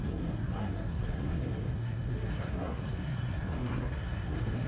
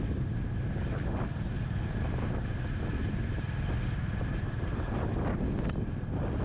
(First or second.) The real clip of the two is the second